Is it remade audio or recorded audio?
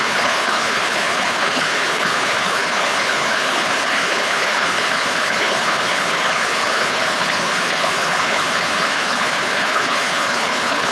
remade